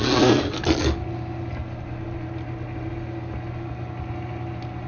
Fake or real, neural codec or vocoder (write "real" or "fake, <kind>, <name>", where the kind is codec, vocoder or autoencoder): real